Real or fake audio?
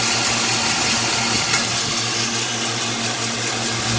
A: real